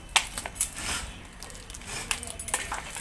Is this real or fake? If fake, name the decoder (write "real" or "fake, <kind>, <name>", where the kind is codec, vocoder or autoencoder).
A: real